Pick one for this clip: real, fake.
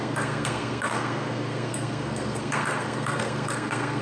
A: fake